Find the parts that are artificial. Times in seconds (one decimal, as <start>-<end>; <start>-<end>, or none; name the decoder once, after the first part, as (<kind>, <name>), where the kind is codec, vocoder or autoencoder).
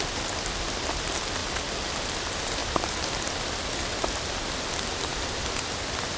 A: none